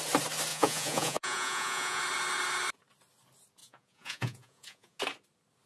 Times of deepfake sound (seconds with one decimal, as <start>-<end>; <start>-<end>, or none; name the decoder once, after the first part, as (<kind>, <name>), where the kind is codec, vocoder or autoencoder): 0.5-2.0 (vocoder, Vocos); 3.6-5.0